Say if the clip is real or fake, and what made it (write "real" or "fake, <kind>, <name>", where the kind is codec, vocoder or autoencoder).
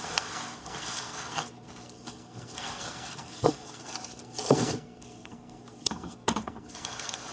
fake, codec, SNAC